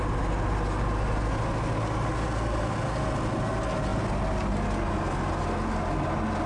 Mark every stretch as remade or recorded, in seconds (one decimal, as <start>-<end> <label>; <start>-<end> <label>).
0.0-6.5 recorded